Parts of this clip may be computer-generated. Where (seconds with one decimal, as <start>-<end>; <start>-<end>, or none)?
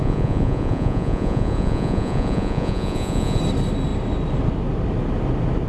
0.0-3.4